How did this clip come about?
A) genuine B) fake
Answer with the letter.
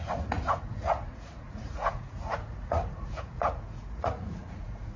B